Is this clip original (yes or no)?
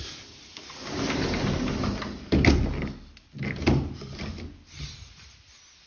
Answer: yes